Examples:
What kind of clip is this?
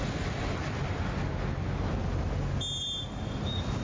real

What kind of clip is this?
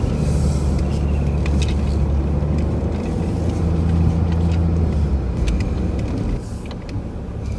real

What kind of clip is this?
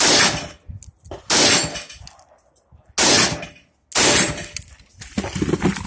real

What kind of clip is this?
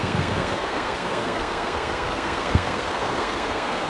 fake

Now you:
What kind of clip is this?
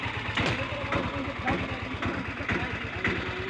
real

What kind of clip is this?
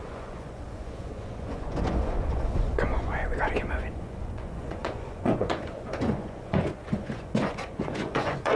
fake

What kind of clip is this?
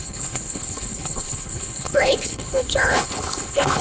fake